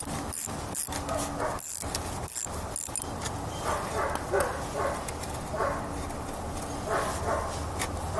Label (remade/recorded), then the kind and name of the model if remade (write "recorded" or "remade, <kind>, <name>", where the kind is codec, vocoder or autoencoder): recorded